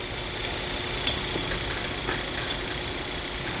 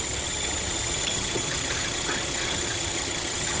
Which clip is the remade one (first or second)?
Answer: second